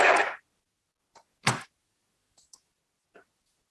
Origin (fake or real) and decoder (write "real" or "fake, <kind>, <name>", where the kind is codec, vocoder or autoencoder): real